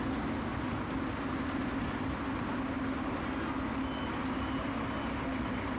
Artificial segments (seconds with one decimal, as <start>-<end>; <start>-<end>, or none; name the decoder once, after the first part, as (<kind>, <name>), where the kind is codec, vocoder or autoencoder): none